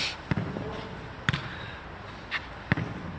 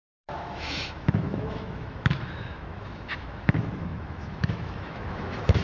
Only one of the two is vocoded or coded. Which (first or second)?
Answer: second